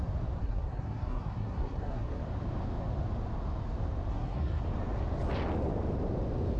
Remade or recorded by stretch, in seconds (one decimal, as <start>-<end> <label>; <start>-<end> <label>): 0.0-0.4 recorded; 0.4-2.2 remade; 2.2-4.1 recorded; 4.1-4.6 remade; 4.6-6.6 recorded